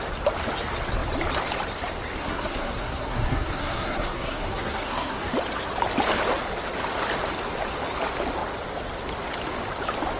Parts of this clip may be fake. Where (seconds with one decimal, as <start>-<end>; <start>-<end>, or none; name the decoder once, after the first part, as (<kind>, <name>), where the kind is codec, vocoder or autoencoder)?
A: 2.2-5.3 (codec, SNAC)